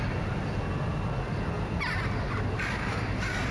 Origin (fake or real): real